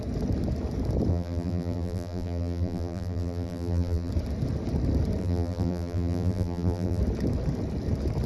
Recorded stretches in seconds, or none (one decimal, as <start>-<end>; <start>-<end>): 0.0-1.1; 4.1-5.2; 7.0-8.3